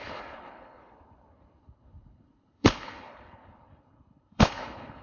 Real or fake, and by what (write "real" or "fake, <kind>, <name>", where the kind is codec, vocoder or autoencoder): fake, codec, HILCodec